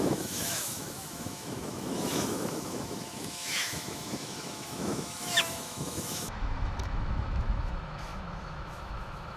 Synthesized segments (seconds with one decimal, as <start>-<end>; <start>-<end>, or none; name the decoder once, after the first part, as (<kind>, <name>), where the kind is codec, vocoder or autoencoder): 0.0-9.4 (autoencoder, DAC-VAE)